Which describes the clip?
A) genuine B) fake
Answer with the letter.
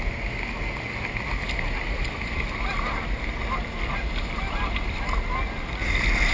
A